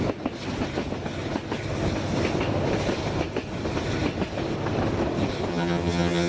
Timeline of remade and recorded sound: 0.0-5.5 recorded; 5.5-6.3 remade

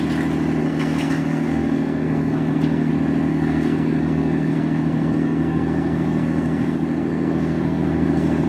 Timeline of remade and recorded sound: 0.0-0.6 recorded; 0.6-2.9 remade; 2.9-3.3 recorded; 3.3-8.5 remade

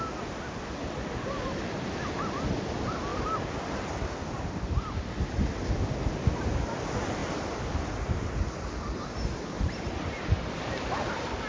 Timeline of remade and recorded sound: 0.0-11.5 recorded